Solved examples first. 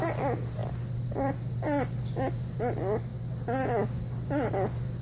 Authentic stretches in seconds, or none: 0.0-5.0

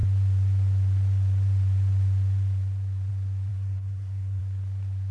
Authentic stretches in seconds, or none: 0.0-3.5; 4.4-5.1

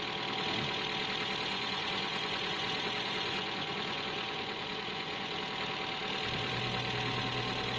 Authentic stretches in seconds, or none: 0.0-1.5; 5.4-7.8

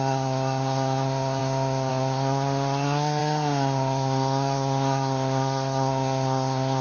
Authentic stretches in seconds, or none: none

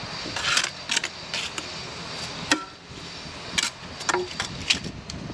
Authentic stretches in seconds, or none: 0.0-5.3

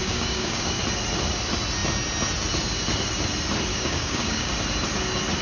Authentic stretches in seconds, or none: 0.8-3.7; 4.5-5.4

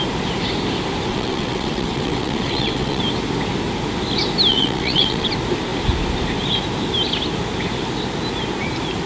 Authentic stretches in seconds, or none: 0.0-1.1; 3.0-4.5; 5.3-9.1

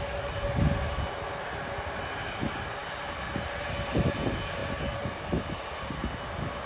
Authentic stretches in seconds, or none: 0.0-6.7